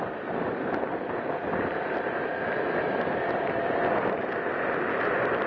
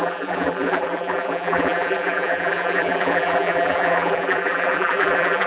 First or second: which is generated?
second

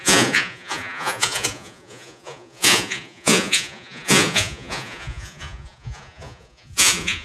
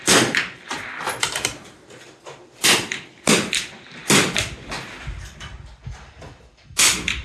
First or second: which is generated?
first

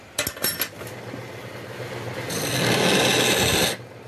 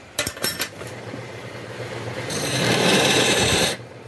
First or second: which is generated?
second